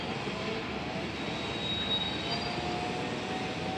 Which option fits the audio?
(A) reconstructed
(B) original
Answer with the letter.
B